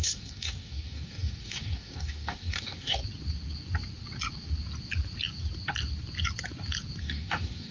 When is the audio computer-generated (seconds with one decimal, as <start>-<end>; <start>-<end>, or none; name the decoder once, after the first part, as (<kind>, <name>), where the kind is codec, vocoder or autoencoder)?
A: 0.0-3.0 (codec, DAC); 7.0-7.7